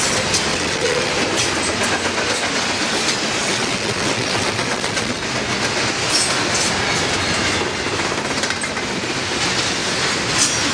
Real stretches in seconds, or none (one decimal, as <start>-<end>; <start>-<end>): 0.0-0.5; 1.1-3.4; 5.2-10.7